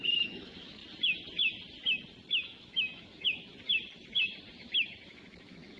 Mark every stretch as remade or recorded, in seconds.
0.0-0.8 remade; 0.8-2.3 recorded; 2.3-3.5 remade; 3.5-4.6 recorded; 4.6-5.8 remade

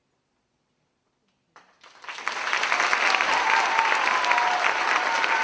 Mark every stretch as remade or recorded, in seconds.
0.0-5.4 recorded

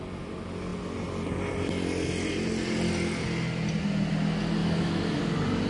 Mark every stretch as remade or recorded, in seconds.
0.0-4.6 recorded; 4.6-5.2 remade; 5.2-5.7 recorded